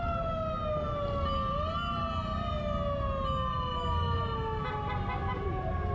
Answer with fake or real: real